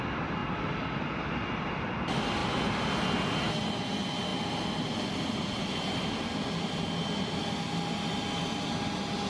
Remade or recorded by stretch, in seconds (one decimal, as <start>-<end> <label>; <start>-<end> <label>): 0.0-9.3 recorded